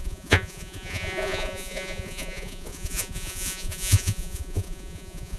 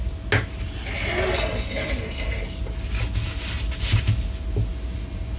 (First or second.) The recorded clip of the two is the second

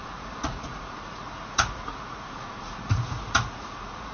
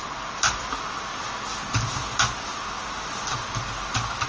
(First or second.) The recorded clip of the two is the second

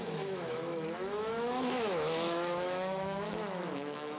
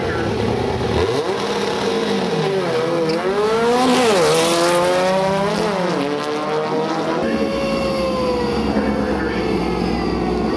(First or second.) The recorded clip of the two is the second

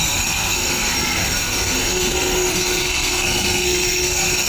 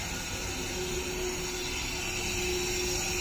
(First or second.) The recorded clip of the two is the second